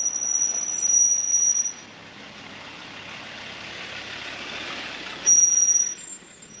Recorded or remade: recorded